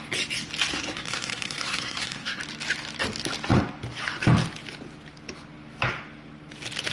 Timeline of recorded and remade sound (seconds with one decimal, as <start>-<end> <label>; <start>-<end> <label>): 0.0-0.7 recorded; 0.7-2.4 remade; 2.4-6.9 recorded